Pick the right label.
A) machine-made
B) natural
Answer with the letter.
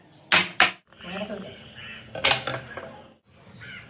B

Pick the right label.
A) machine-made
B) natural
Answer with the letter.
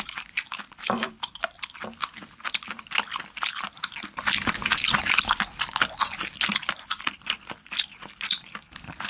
A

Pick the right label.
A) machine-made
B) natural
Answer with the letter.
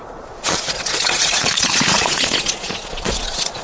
A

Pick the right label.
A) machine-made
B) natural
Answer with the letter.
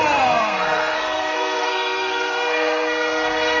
A